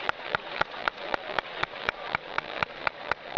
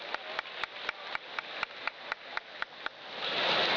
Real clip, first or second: second